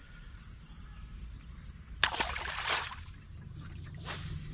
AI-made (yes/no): no